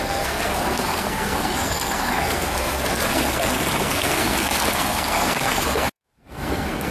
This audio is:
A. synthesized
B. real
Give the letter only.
A